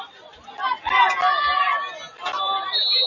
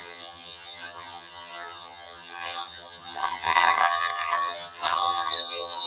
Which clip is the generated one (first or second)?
second